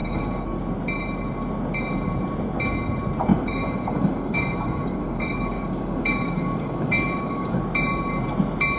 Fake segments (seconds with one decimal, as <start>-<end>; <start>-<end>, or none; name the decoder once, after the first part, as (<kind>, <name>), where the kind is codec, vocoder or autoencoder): 0.0-0.6 (codec, DAC); 3.3-7.6